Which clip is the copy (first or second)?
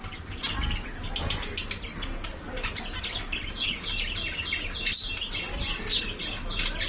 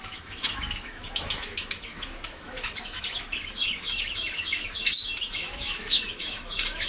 second